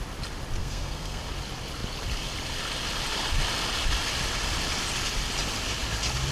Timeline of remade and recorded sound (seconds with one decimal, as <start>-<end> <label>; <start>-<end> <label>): 0.0-0.6 recorded; 0.6-1.2 remade; 1.2-6.3 recorded